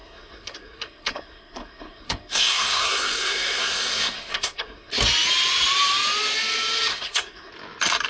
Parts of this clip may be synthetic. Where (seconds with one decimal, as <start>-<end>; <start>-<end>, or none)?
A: 0.0-4.9; 6.9-7.5

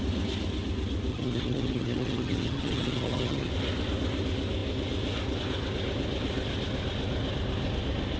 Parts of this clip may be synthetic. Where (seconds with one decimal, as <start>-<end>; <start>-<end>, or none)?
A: 1.1-3.5

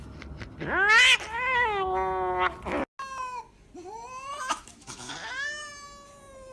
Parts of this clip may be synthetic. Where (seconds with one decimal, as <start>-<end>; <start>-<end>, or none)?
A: 4.3-5.1

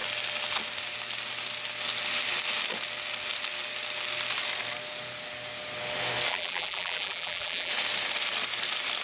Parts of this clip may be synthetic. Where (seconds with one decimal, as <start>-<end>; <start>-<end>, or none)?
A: 6.3-7.7

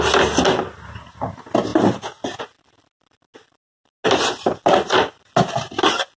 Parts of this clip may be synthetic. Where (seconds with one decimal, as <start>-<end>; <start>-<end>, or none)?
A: none

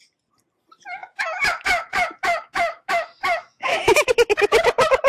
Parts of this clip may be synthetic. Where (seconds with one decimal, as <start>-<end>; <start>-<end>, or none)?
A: 1.0-4.1